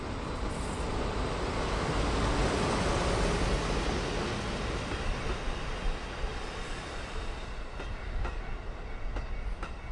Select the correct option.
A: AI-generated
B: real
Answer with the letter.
B